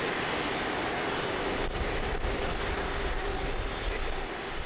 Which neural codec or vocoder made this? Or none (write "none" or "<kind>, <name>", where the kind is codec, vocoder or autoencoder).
none